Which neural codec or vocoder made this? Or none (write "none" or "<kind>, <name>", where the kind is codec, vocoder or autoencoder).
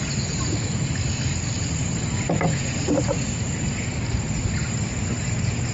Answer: none